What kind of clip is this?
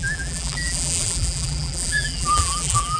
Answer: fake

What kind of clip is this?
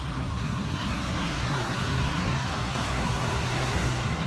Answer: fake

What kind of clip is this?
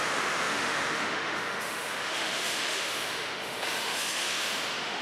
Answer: fake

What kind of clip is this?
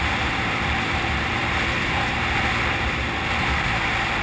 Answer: fake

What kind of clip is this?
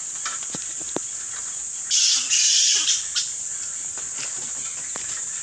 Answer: real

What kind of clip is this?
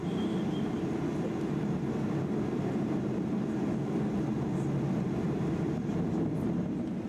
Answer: real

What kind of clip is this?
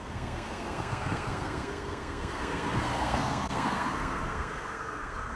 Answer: fake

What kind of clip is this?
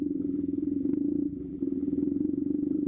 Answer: fake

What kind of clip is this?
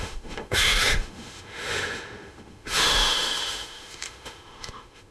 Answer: fake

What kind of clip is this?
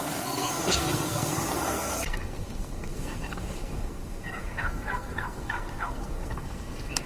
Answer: fake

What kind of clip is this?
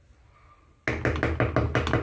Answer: real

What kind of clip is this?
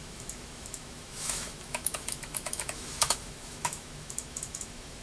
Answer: fake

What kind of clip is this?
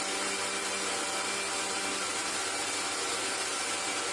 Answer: real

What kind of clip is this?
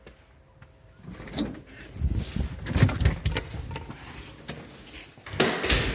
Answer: real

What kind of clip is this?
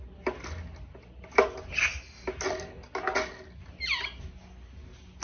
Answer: real